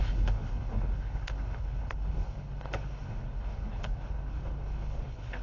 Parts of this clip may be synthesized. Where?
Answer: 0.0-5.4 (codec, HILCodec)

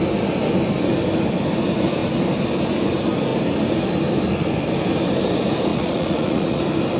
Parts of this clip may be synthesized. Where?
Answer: 5.7-6.6 (vocoder, Vocos)

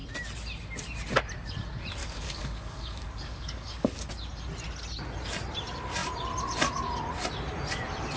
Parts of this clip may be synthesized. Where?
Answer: 2.0-4.1 (codec, DAC)

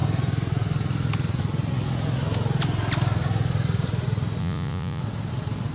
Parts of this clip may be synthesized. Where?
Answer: 4.4-5.0 (vocoder, Vocos)

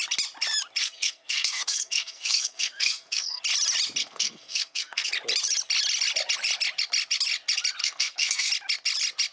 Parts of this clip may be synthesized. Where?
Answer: 0.8-3.4 (codec, SNAC); 4.0-5.1; 7.8-8.5